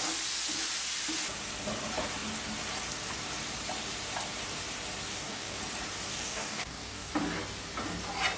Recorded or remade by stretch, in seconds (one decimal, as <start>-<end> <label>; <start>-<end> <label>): 0.0-5.1 recorded; 5.1-5.6 remade; 5.6-6.1 recorded; 6.1-7.1 remade; 7.1-8.4 recorded